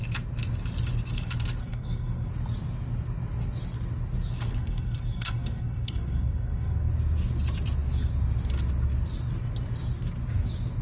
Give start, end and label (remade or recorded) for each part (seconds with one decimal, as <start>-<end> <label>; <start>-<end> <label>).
0.0-1.6 recorded; 1.6-2.3 remade; 2.3-4.6 recorded; 4.6-6.9 remade; 6.9-10.8 recorded